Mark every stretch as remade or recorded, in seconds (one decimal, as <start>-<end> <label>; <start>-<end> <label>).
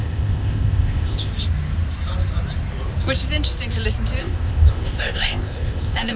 0.0-1.3 remade; 1.3-4.2 recorded; 4.2-6.2 remade